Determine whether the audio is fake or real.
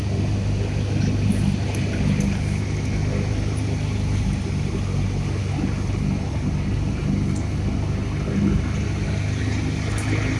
real